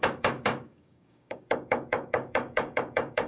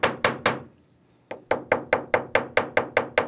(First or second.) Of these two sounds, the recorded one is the second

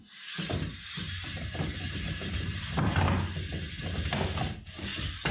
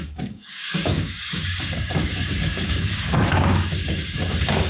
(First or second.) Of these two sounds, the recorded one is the first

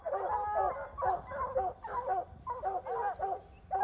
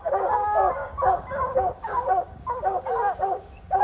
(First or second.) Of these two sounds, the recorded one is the first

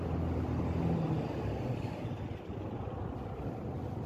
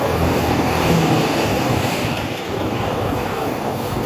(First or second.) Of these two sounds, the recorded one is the first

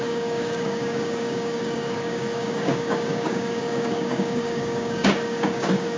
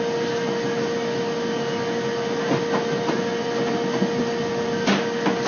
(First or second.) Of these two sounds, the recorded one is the second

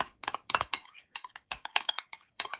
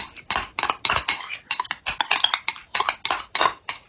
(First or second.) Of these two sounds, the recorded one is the second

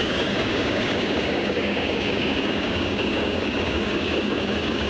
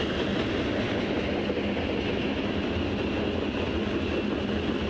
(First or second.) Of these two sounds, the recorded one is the second